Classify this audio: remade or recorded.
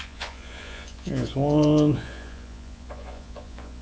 remade